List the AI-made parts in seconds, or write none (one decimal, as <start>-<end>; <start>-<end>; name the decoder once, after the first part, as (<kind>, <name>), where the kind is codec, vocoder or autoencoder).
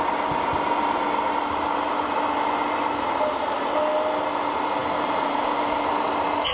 none